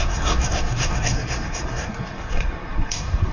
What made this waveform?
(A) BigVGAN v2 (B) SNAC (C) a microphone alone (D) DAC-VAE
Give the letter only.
B